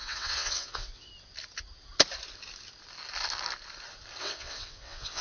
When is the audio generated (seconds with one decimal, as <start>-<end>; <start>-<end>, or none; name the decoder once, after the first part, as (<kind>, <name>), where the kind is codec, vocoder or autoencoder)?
0.0-1.1 (vocoder, WaveNeXt); 4.2-5.2